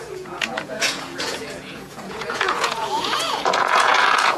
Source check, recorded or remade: remade